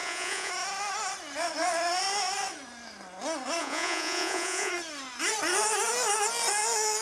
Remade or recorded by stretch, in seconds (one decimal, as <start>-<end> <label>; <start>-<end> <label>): 0.0-0.5 remade; 0.5-3.6 recorded; 3.6-4.7 remade; 4.7-7.0 recorded